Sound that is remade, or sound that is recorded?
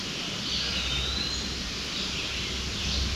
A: recorded